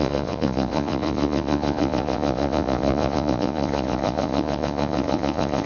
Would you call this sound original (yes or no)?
no